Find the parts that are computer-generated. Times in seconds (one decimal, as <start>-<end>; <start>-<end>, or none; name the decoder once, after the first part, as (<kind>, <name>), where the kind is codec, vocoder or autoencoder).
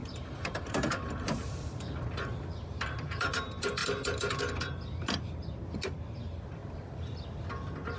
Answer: 0.0-3.4 (vocoder, BigVGAN v2)